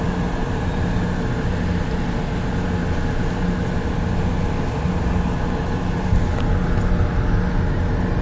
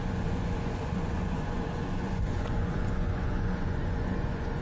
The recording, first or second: first